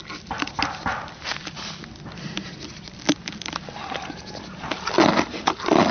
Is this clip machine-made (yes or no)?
no